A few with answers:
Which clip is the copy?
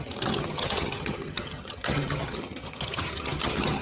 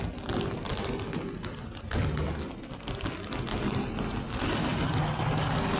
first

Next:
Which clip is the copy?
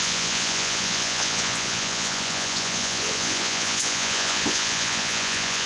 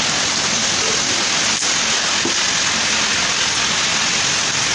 first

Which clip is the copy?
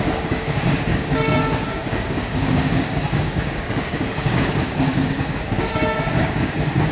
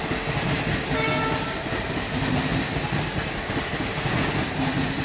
first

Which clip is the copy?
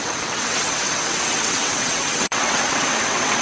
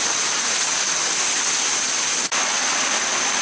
first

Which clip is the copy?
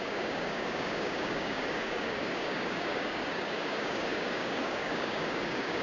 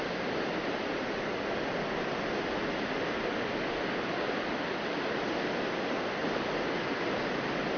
first